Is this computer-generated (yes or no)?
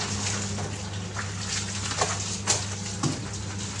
no